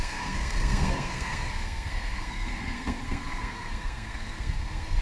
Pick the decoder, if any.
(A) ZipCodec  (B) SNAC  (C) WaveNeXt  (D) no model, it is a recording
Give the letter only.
B